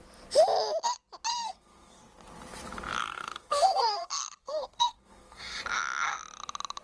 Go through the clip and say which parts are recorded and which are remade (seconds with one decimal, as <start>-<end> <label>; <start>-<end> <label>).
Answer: 0.0-1.3 recorded; 1.3-2.0 remade; 2.0-3.0 recorded; 3.0-5.6 remade; 5.6-6.8 recorded

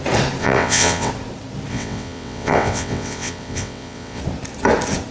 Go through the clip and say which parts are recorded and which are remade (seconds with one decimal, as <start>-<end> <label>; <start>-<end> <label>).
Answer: 0.0-0.4 recorded; 0.4-1.1 remade; 1.1-1.7 recorded; 1.7-4.2 remade; 4.2-5.1 recorded

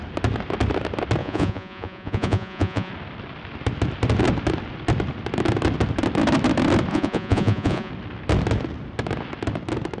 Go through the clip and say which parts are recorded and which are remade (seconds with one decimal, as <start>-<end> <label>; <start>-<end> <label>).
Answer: 0.0-1.2 recorded; 1.2-2.9 remade; 2.9-6.9 recorded; 6.9-7.9 remade; 7.9-10.0 recorded

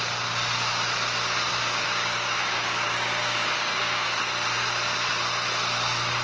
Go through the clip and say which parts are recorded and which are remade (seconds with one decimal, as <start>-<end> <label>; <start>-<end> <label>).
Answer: 0.0-1.5 recorded; 1.5-4.2 remade; 4.2-6.2 recorded

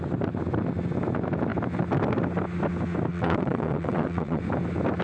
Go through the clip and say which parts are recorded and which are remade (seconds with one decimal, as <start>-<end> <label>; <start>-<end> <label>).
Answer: 0.0-3.1 recorded; 3.1-4.4 remade; 4.4-5.0 recorded

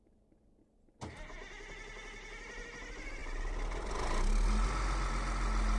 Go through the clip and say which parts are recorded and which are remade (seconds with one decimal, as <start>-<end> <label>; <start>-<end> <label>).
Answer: 0.0-5.8 recorded

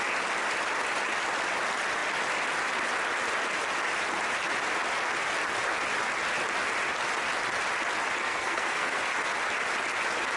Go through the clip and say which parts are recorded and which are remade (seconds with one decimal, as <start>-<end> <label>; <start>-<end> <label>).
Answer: 0.0-8.2 recorded; 8.2-9.0 remade; 9.0-10.4 recorded